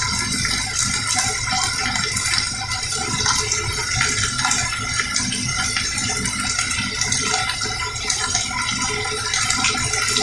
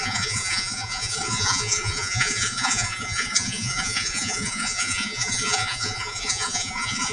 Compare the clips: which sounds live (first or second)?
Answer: first